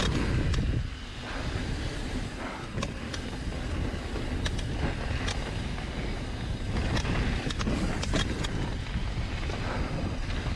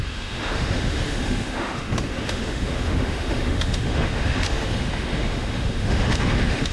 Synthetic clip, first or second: second